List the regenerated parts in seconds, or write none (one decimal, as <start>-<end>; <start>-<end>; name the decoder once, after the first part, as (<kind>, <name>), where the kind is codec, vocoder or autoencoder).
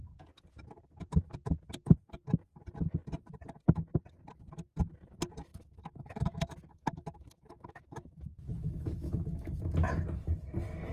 5.5-9.6 (autoencoder, DAC-VAE)